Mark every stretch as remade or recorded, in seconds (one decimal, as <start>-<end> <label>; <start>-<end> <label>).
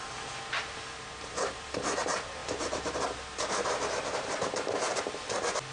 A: 0.0-5.1 remade; 5.1-5.7 recorded